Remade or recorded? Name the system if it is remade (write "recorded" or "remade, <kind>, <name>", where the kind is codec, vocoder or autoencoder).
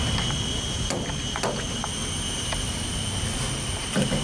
recorded